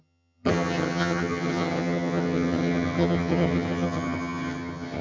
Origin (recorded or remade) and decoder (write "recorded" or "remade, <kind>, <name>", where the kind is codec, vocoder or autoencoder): remade, vocoder, HiFi-GAN